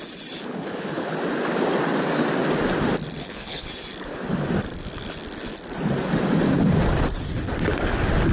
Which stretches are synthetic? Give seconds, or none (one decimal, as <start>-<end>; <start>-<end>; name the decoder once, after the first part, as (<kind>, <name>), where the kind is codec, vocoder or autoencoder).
0.5-1.1 (codec, HILCodec); 3.2-3.7